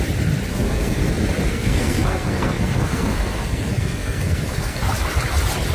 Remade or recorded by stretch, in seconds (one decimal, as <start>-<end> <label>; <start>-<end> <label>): 0.0-0.5 recorded; 0.5-1.1 remade; 1.1-1.5 recorded; 1.5-4.9 remade; 4.9-5.7 recorded